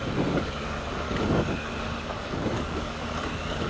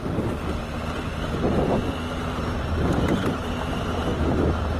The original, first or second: second